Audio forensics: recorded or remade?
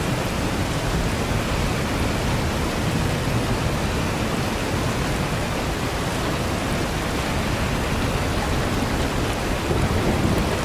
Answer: recorded